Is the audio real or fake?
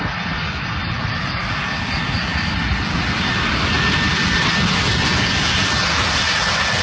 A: real